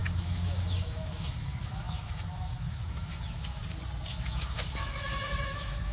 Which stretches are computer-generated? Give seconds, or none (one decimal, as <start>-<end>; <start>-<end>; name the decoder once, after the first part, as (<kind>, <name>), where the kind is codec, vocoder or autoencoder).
0.0-3.6 (autoencoder, DAC-VAE); 4.1-5.9